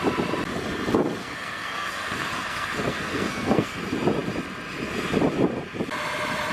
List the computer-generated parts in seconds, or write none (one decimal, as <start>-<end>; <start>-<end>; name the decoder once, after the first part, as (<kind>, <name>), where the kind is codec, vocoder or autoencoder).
1.2-3.8 (codec, SNAC)